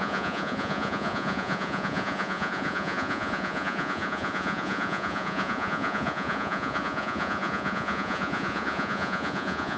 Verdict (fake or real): fake